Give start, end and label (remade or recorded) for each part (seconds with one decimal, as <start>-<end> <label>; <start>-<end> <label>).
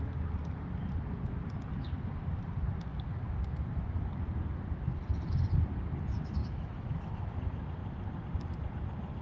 0.0-6.4 recorded; 6.4-7.3 remade; 7.3-9.2 recorded